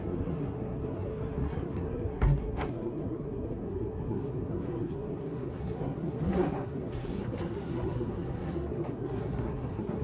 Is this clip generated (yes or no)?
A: yes